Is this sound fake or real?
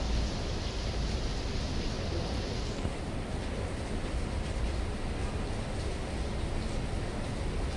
real